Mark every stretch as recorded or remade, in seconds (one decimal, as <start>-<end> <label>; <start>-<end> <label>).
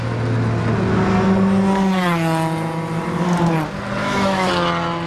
0.0-4.0 recorded; 4.0-4.5 remade; 4.5-5.1 recorded